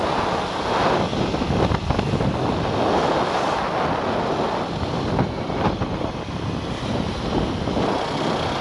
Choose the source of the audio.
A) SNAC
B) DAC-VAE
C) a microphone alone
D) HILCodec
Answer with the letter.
C